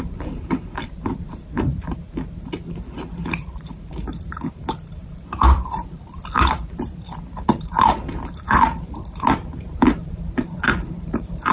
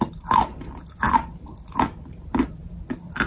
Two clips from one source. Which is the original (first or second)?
second